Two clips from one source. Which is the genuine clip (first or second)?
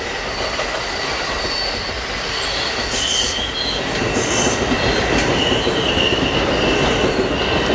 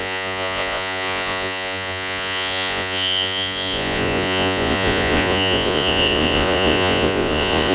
first